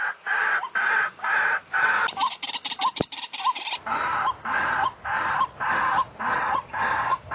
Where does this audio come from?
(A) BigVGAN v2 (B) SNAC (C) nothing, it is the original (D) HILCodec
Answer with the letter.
A